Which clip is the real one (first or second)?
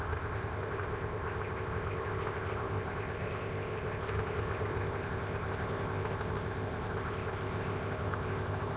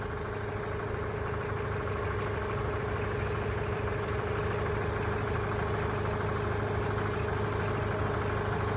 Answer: second